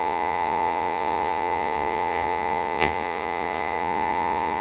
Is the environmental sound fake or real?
fake